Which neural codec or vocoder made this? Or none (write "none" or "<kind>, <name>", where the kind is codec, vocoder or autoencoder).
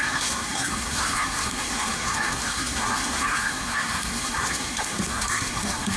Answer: codec, SNAC